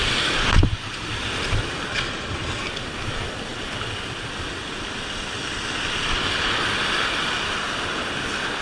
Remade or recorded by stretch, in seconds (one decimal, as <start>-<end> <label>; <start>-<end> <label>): 0.0-1.9 recorded; 1.9-2.6 remade; 2.6-8.6 recorded